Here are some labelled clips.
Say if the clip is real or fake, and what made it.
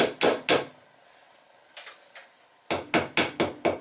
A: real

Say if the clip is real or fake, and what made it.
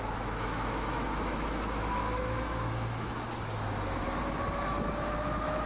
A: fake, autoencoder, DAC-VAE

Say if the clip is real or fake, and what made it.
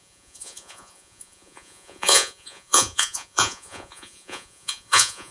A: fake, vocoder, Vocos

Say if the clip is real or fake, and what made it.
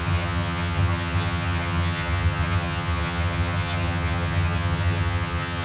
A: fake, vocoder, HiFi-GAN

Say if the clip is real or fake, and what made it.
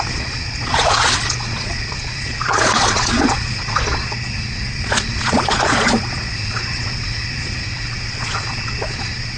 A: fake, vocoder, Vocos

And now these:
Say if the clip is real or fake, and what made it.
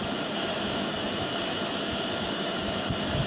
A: fake, autoencoder, DAC-VAE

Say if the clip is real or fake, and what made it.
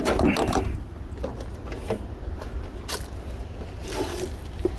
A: real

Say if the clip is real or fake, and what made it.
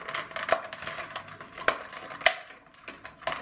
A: real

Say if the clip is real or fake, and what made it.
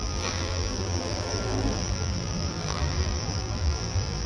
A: fake, vocoder, BigVGAN v2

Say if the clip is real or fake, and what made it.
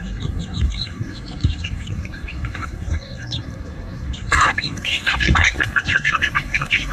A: fake, codec, SNAC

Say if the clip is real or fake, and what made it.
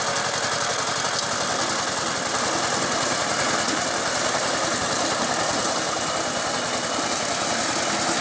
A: real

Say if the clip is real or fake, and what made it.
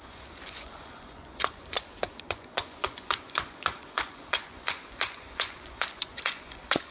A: fake, vocoder, Vocos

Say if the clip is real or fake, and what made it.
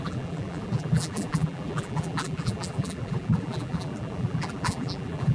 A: fake, vocoder, BigVGAN v2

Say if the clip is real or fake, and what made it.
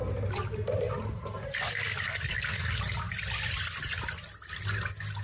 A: real